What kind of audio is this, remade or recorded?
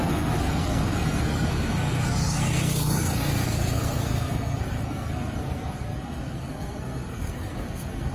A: remade